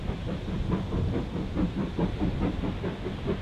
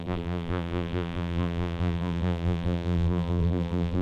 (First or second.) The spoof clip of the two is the second